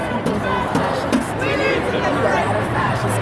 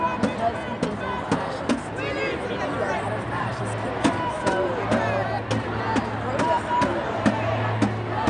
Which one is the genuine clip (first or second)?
second